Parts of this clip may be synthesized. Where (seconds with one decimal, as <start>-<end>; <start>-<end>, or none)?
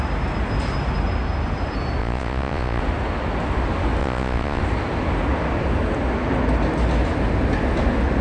2.0-2.8; 4.0-4.6